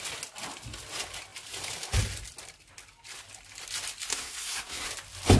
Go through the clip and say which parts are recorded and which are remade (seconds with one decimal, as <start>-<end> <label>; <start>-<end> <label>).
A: 0.0-4.1 recorded; 4.1-4.9 remade; 4.9-5.4 recorded